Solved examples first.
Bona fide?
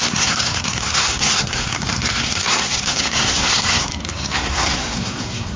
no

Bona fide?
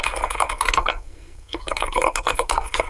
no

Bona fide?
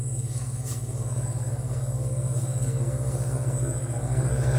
no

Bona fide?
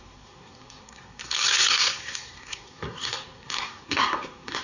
no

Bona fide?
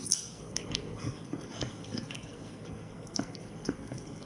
no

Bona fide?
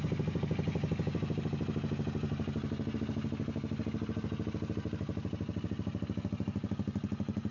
yes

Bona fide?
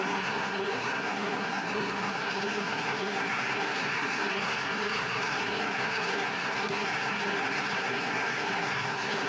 no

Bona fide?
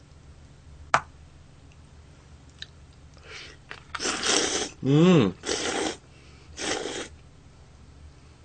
yes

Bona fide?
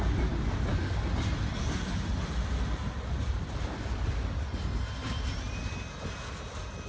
yes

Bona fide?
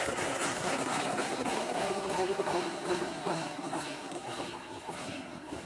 no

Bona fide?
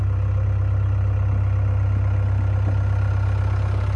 yes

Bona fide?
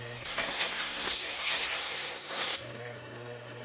no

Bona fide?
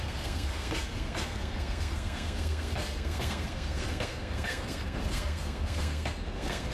no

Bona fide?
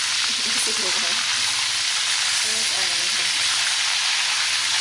yes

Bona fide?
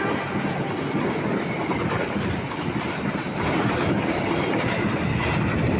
yes